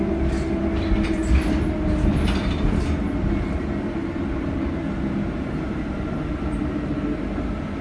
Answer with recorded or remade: recorded